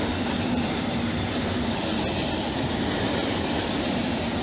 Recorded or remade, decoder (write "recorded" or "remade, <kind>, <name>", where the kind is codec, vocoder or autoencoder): recorded